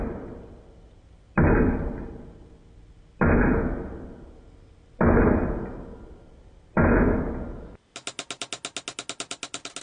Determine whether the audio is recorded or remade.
recorded